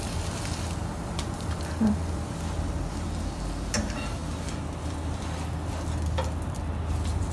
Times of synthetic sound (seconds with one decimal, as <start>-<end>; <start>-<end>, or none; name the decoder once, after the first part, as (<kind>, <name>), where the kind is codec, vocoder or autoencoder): none